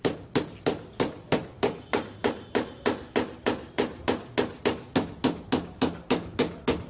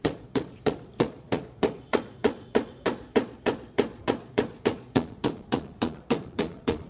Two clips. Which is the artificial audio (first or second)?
second